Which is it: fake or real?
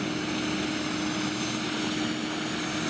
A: real